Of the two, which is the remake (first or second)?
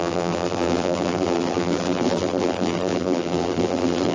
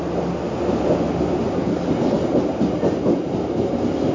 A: first